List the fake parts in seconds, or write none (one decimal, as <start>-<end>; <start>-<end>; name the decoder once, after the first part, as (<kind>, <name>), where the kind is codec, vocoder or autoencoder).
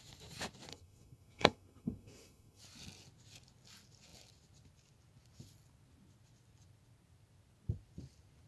0.7-2.6 (codec, SNAC)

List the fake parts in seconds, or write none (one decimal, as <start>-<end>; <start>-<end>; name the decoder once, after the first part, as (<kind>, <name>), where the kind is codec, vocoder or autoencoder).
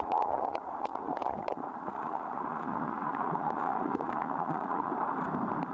0.0-4.9 (vocoder, Vocos)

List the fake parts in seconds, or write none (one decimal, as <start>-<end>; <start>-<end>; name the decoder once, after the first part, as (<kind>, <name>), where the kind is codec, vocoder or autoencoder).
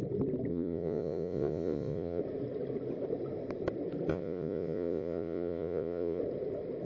0.5-2.2 (vocoder, Vocos); 4.1-6.2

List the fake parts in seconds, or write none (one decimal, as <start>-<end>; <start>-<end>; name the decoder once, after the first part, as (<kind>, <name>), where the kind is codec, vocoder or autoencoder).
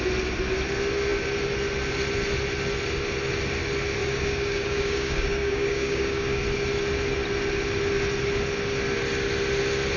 4.0-6.4 (codec, DAC)